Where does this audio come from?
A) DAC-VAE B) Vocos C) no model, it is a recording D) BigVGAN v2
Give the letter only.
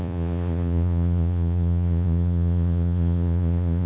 B